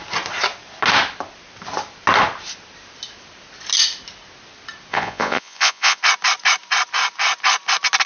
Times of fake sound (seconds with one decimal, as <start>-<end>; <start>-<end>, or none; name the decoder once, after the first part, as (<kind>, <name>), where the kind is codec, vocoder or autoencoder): 4.9-6.0 (vocoder, Vocos)